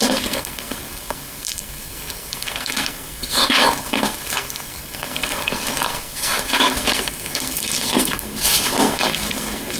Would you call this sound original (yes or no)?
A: no